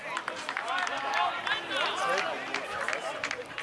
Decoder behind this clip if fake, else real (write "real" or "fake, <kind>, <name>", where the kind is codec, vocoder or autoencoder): real